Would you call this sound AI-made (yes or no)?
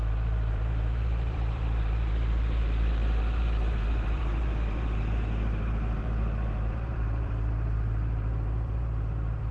yes